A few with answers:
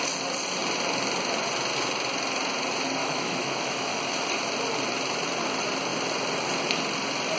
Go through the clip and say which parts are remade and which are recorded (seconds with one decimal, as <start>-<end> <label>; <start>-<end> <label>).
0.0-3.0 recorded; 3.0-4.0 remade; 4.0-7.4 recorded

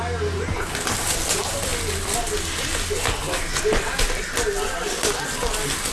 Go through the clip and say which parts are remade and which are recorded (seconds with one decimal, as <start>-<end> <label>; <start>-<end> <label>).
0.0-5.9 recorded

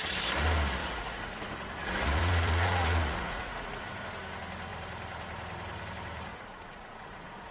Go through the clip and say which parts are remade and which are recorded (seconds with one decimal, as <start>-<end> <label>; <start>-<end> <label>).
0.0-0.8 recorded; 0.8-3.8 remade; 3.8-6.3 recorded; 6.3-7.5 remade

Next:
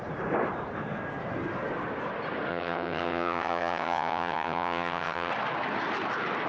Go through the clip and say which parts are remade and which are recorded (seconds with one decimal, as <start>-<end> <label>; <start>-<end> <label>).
0.0-2.5 recorded; 2.5-5.3 remade; 5.3-6.5 recorded